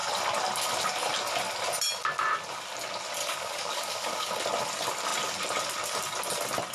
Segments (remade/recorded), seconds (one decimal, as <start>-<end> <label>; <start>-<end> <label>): 0.0-3.2 recorded; 3.2-4.3 remade; 4.3-6.7 recorded